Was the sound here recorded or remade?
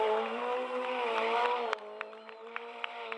remade